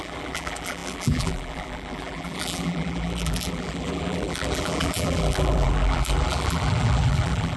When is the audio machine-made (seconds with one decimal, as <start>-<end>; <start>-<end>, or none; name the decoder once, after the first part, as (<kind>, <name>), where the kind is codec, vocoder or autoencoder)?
0.0-7.6 (vocoder, BigVGAN v2)